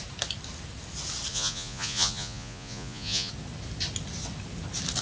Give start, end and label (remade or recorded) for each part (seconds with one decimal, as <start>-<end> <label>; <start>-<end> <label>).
0.0-1.3 recorded; 1.3-3.3 remade; 3.3-5.0 recorded